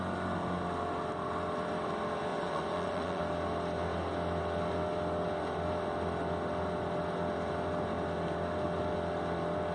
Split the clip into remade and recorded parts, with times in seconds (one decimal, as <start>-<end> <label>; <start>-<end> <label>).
0.0-2.3 recorded; 2.3-3.2 remade; 3.2-9.7 recorded